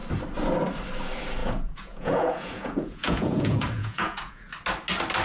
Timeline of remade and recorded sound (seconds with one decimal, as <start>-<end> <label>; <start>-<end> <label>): 0.0-1.4 recorded; 1.4-4.5 remade; 4.5-5.2 recorded